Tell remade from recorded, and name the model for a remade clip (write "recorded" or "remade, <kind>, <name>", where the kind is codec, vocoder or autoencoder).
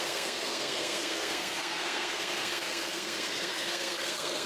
remade, codec, SNAC